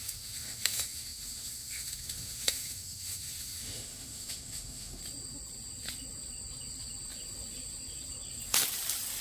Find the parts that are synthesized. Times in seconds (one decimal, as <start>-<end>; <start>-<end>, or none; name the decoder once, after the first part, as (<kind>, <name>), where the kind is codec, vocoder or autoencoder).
0.0-5.0 (autoencoder, DAC-VAE)